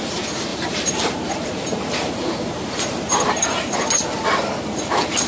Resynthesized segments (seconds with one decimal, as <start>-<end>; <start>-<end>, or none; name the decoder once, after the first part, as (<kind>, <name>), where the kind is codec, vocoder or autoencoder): 0.5-3.7 (vocoder, BigVGAN v2)